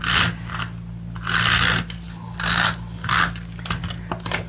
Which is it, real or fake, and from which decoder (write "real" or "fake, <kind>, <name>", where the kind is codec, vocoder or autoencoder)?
real